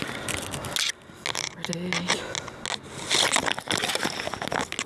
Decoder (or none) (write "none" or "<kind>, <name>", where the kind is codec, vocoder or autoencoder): none